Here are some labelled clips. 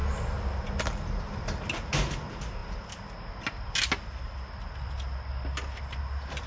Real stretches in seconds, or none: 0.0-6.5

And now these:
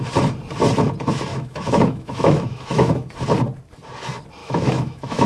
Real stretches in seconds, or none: 0.0-1.3; 3.1-4.4

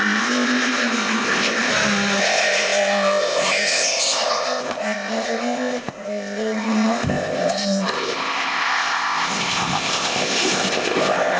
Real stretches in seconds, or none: 1.7-2.2

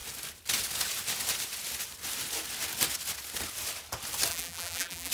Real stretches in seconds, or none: 0.0-4.3

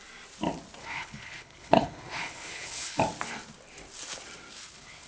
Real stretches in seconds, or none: 0.0-0.8; 3.0-4.6